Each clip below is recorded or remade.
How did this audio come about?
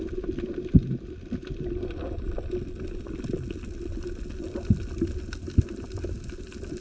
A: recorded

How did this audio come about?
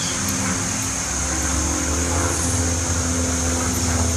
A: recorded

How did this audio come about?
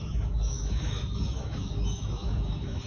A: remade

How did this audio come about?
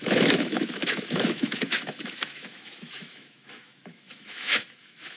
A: remade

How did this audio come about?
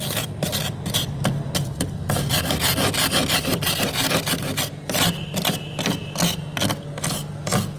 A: recorded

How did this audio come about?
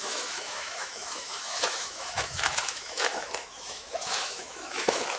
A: remade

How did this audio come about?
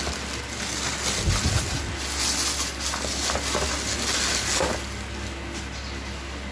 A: recorded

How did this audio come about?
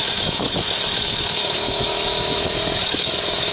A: remade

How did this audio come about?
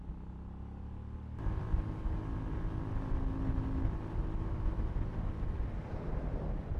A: recorded